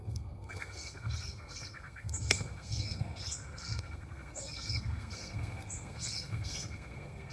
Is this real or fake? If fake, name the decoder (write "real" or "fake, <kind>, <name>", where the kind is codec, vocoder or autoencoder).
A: fake, codec, SNAC